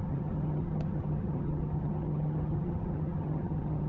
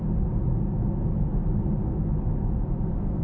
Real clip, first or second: second